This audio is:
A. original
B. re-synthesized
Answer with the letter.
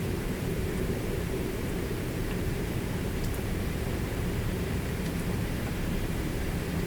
B